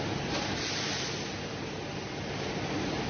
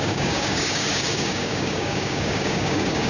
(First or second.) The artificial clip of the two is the second